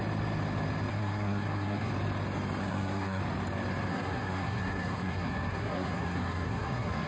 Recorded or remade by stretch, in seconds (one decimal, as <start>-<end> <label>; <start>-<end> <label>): 0.0-0.9 recorded; 0.9-1.9 remade; 1.9-2.6 recorded; 2.6-3.2 remade; 3.2-3.9 recorded; 3.9-7.1 remade